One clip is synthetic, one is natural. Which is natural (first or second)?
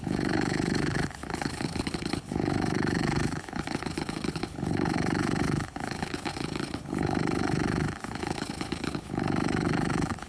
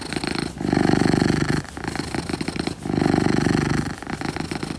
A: second